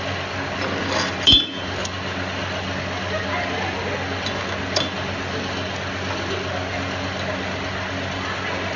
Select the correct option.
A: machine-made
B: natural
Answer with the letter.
B